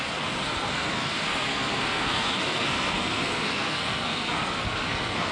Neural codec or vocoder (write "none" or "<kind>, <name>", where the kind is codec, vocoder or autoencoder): codec, SNAC